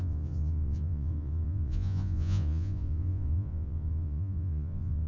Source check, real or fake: fake